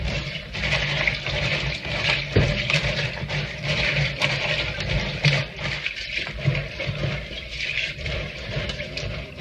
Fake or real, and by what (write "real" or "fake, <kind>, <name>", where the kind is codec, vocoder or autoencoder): fake, vocoder, BigVGAN v2